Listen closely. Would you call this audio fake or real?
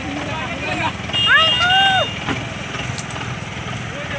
real